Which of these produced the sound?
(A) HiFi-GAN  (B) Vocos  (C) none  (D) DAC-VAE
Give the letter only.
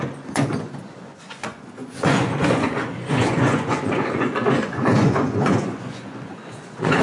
B